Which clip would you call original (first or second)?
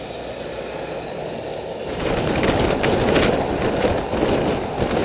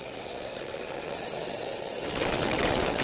first